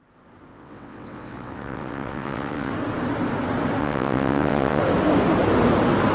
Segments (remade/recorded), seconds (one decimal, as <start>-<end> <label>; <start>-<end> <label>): 0.0-0.5 recorded; 0.5-2.7 remade; 2.7-3.8 recorded; 3.8-4.8 remade; 4.8-6.1 recorded